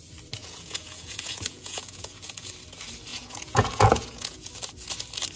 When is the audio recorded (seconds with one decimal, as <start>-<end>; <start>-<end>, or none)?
0.0-0.4; 2.5-3.1; 4.5-5.4